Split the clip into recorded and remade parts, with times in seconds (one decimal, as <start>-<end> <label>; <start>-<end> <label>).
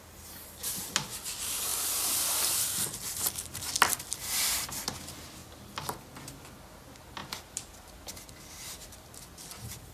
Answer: 0.0-1.7 recorded; 1.7-5.0 remade; 5.0-7.2 recorded; 7.2-8.5 remade; 8.5-9.9 recorded